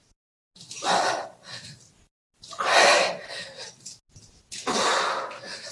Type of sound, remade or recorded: recorded